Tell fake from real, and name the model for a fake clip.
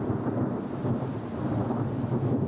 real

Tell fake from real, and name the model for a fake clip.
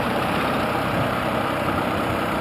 fake, vocoder, BigVGAN v2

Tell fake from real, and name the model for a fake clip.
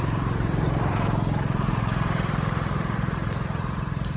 fake, vocoder, BigVGAN v2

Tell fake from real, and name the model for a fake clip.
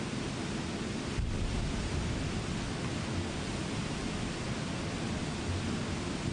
real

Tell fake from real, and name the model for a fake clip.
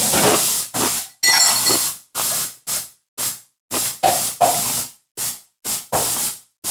real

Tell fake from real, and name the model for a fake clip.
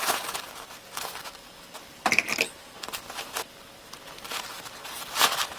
fake, vocoder, BigVGAN v2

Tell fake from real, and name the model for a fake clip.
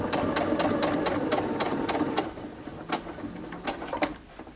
real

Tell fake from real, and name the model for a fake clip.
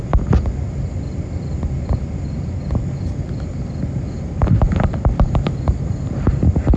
real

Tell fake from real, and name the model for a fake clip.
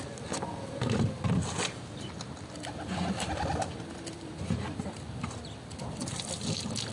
real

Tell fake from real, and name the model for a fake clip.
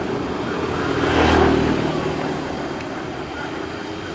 real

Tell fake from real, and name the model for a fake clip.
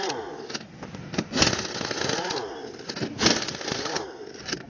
real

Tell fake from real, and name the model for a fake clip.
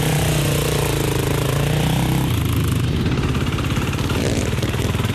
fake, vocoder, BigVGAN v2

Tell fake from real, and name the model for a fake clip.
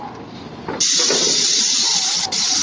fake, vocoder, BigVGAN v2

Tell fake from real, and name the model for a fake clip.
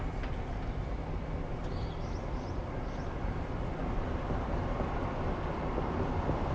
real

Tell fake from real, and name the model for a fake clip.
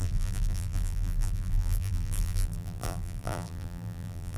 fake, vocoder, BigVGAN v2